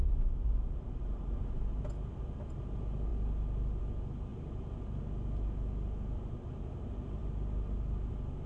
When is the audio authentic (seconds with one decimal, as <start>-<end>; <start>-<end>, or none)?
0.0-8.5